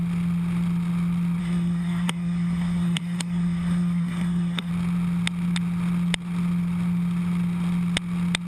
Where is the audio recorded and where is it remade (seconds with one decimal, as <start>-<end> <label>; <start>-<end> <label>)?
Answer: 0.0-1.4 recorded; 1.4-4.7 remade; 4.7-8.5 recorded